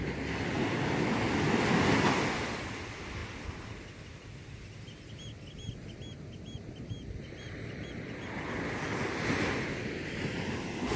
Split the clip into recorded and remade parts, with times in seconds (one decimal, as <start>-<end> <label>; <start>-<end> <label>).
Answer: 0.0-11.0 recorded